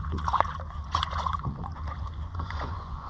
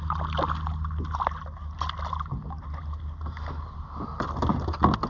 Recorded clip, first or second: second